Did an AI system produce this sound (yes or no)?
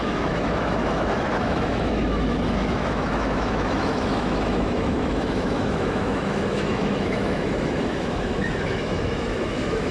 yes